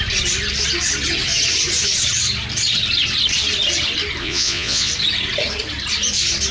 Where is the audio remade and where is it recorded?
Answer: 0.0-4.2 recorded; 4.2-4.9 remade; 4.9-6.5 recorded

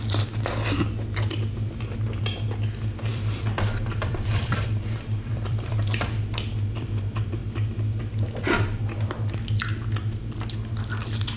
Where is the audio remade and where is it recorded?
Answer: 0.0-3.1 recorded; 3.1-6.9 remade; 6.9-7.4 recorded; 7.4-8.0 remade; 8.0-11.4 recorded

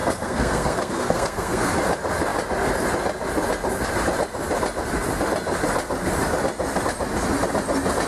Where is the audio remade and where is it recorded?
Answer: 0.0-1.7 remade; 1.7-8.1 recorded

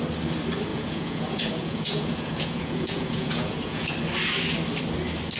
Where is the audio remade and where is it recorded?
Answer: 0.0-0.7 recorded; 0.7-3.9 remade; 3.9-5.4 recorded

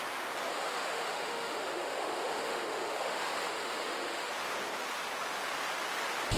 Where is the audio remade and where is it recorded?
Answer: 0.0-0.5 recorded; 0.5-4.3 remade; 4.3-6.4 recorded

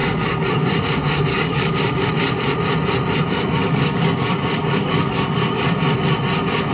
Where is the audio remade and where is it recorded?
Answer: 0.0-0.8 remade; 0.8-1.3 recorded; 1.3-2.1 remade; 2.1-3.6 recorded; 3.6-5.8 remade; 5.8-6.7 recorded

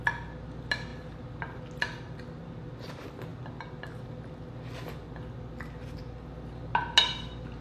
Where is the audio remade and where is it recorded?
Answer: 0.0-7.6 recorded

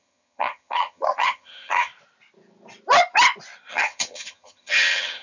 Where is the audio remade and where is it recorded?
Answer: 0.0-1.9 remade; 1.9-3.7 recorded; 3.7-5.2 remade